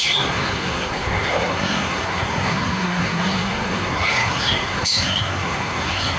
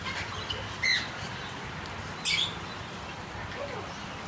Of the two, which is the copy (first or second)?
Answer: first